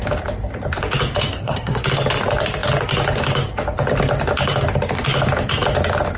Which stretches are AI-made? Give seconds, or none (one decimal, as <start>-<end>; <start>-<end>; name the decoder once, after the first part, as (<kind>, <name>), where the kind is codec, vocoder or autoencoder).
1.3-1.8 (codec, SNAC)